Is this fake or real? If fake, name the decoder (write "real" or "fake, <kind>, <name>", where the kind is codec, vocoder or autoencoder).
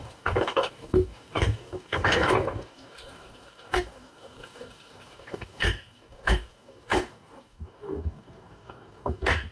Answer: fake, codec, DAC